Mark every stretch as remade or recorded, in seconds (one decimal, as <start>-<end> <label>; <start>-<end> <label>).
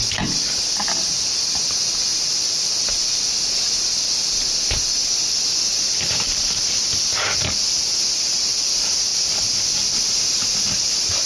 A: 0.0-11.3 recorded